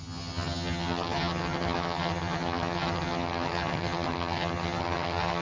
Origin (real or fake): fake